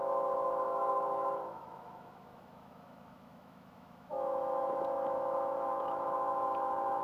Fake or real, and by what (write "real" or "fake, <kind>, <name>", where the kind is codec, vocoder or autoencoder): fake, autoencoder, DAC-VAE